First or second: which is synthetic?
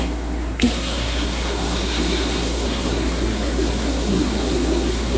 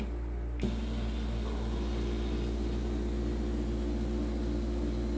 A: first